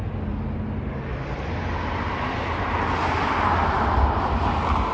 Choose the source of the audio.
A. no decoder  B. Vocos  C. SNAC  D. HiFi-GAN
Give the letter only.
A